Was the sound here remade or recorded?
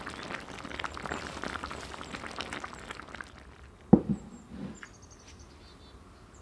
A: recorded